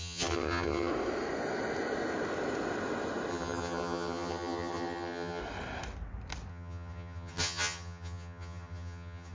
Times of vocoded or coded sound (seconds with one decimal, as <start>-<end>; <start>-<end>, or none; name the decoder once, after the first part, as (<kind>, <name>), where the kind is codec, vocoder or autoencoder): 0.0-0.9 (vocoder, HiFi-GAN); 3.3-5.4; 6.5-9.3